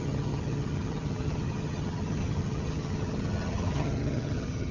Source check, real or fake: fake